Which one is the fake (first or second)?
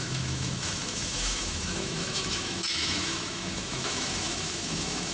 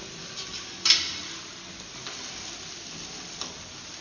first